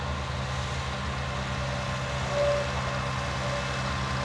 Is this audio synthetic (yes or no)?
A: no